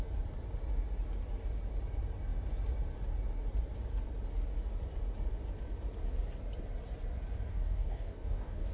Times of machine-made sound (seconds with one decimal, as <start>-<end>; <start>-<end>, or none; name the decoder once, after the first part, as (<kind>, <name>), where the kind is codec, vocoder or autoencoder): 7.5-8.7 (codec, DAC)